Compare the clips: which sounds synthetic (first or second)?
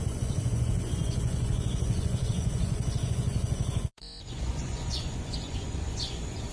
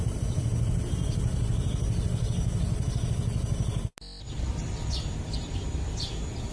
first